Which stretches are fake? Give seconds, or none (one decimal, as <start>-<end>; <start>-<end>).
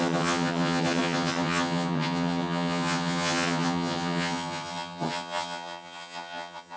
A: 0.0-6.8